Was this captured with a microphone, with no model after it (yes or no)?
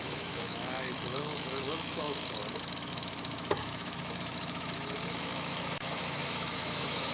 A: no